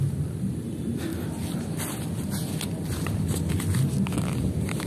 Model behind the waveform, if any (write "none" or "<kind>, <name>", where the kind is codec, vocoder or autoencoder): none